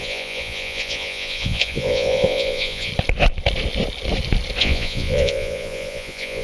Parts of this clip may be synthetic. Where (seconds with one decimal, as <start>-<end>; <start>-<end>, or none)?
0.0-2.9; 4.6-6.4